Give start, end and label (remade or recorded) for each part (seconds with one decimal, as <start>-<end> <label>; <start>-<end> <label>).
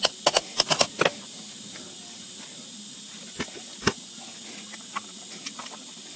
0.0-6.2 recorded